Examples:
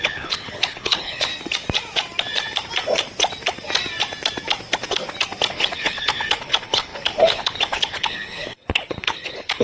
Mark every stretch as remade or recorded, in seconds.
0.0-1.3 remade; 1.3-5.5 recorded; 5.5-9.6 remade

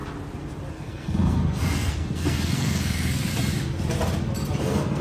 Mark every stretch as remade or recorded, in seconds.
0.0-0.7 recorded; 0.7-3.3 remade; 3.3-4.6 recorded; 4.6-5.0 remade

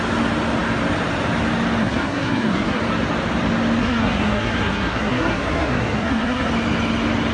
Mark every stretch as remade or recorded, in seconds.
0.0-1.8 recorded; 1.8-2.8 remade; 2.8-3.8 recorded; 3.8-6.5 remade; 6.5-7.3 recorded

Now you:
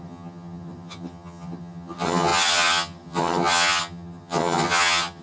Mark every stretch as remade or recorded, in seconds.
0.0-5.2 remade

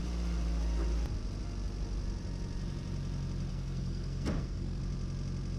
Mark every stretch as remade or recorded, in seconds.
0.0-3.5 recorded; 3.5-4.8 remade; 4.8-5.6 recorded